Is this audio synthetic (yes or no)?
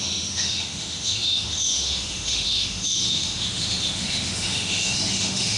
yes